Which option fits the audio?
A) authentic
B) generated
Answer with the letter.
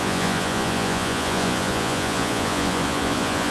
B